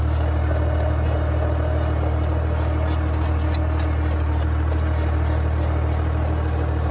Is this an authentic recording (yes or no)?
yes